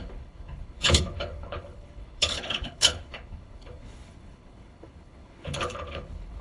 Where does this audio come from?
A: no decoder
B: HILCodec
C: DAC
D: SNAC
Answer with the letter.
B